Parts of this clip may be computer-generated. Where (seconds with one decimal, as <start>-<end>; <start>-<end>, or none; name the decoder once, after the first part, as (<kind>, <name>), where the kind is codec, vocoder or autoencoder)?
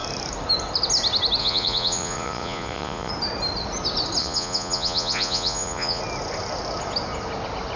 1.4-3.1 (vocoder, Vocos); 4.2-6.0